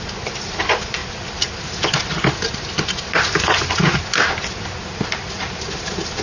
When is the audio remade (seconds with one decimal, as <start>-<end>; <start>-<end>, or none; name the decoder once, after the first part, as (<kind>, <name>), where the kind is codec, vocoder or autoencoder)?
none